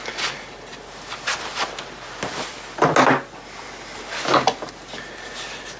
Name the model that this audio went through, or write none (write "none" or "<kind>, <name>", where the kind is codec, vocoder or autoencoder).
none